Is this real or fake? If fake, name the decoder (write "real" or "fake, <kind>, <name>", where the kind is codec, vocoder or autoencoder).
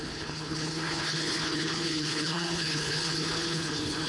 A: fake, codec, HILCodec